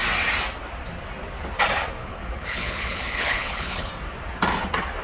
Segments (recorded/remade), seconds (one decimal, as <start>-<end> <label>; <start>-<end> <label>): 0.0-2.0 recorded; 2.0-3.9 remade; 3.9-5.0 recorded